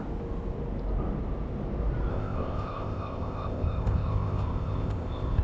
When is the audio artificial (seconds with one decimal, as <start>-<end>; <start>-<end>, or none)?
2.1-5.4